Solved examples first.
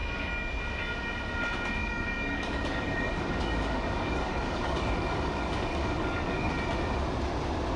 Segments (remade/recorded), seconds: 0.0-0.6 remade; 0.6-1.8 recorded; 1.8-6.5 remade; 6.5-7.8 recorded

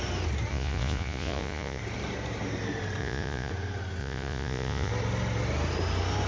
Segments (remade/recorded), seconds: 0.0-0.5 recorded; 0.5-1.8 remade; 1.8-3.0 recorded; 3.0-3.5 remade; 3.5-4.0 recorded; 4.0-4.9 remade; 4.9-6.3 recorded

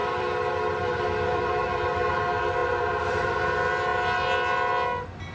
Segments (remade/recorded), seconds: 0.0-1.6 remade; 1.6-2.6 recorded; 2.6-3.4 remade; 3.4-5.3 recorded